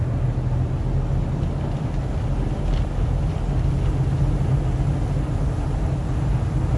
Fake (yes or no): no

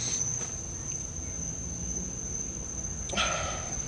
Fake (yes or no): no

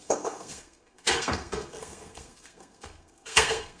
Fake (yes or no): yes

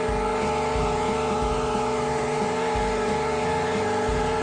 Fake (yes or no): no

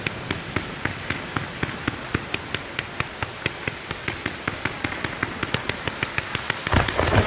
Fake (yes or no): no